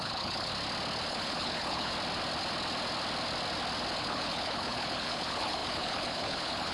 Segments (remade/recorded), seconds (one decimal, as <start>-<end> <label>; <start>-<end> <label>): 0.0-0.5 remade; 0.5-1.1 recorded; 1.1-1.9 remade; 1.9-4.0 recorded; 4.0-6.7 remade